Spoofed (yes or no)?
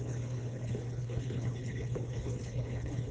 yes